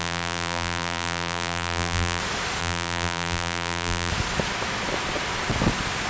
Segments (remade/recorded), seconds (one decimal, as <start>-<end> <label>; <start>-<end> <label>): 0.0-2.2 remade; 2.2-2.6 recorded; 2.6-4.1 remade; 4.1-6.1 recorded